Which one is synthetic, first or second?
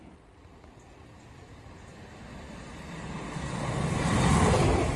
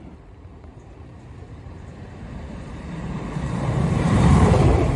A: second